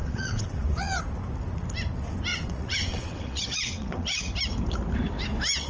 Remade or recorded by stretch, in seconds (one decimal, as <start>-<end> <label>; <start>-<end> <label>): 0.0-1.0 remade; 1.0-2.3 recorded; 2.3-4.2 remade; 4.2-5.7 recorded